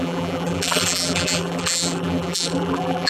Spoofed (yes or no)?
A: yes